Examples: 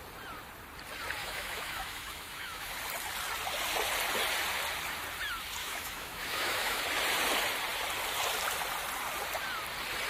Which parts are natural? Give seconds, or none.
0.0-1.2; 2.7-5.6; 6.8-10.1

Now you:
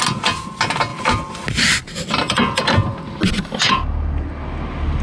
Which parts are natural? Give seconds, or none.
0.0-5.0

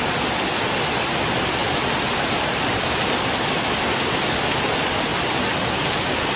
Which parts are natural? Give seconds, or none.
0.0-6.4

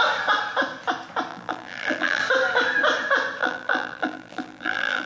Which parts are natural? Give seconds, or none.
0.0-1.3; 2.2-3.4

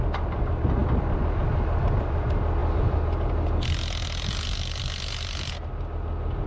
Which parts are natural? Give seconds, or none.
0.0-6.5

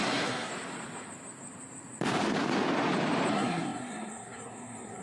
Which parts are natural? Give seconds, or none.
0.5-3.3